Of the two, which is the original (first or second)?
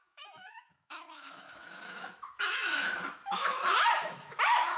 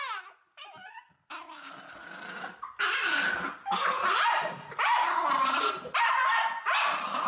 second